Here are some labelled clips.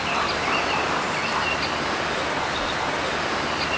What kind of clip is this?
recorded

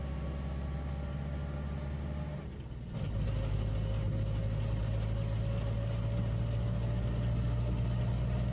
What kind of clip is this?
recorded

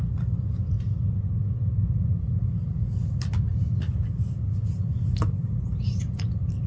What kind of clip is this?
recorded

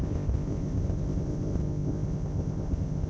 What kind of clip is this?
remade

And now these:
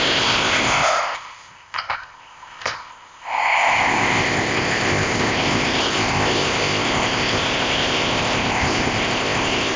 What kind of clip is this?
remade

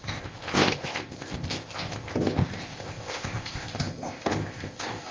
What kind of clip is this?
remade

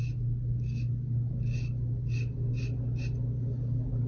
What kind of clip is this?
recorded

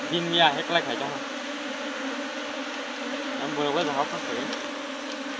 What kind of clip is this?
recorded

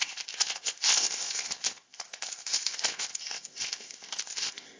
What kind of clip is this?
remade